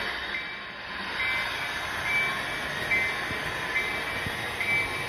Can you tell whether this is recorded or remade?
recorded